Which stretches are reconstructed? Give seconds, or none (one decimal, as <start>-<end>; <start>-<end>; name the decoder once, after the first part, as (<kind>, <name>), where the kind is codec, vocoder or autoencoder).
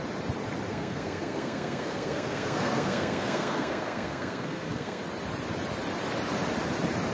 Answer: 0.7-5.0 (codec, SNAC)